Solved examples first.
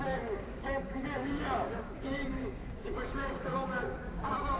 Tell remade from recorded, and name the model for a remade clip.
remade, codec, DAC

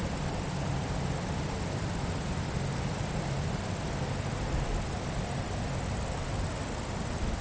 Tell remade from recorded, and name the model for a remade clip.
recorded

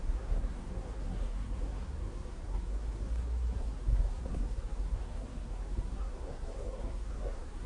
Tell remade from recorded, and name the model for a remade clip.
remade, codec, SNAC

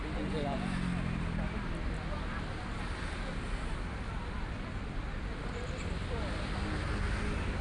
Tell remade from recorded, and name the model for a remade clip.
recorded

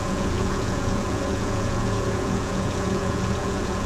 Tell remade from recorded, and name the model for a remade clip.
remade, vocoder, Vocos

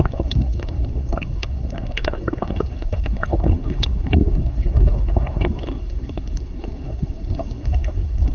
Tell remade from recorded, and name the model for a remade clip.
remade, codec, SNAC